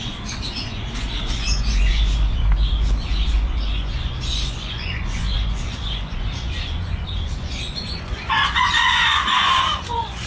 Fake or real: fake